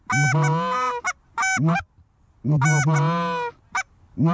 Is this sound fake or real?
real